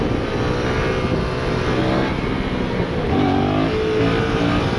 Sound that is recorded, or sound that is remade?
recorded